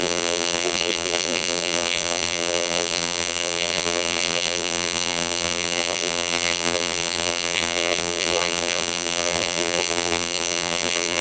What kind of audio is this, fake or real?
fake